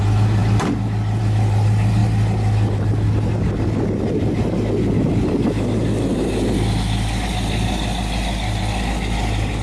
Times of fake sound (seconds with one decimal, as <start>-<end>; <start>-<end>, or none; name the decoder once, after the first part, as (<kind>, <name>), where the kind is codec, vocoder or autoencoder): none